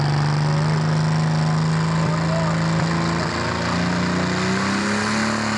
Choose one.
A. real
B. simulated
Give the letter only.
A